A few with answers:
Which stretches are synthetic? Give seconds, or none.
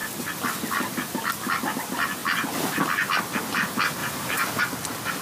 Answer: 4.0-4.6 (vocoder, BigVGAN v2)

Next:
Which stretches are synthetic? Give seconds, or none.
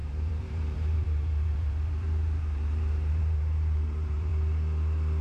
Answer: 0.0-4.3 (vocoder, BigVGAN v2)